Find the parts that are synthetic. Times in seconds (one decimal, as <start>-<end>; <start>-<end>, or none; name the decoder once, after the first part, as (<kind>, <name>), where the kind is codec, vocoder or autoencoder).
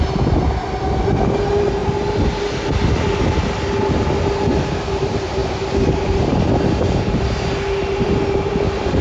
none